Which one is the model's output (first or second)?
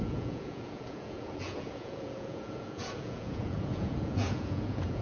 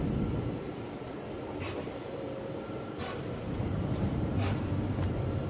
first